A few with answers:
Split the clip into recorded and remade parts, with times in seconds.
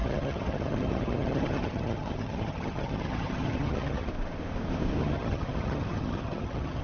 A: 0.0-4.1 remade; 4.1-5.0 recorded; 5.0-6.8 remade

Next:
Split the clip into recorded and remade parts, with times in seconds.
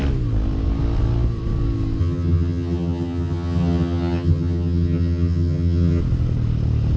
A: 0.0-2.0 recorded; 2.0-6.0 remade; 6.0-7.0 recorded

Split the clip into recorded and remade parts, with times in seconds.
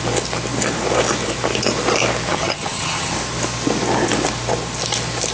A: 0.0-2.3 recorded; 2.3-3.1 remade; 3.1-5.3 recorded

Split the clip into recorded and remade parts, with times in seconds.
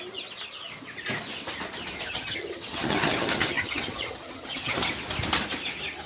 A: 0.0-2.1 recorded; 2.1-4.9 remade; 4.9-6.1 recorded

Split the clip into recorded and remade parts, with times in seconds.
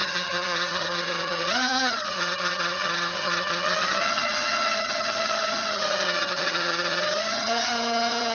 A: 0.0-8.3 remade